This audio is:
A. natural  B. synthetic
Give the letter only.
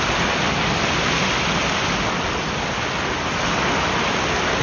A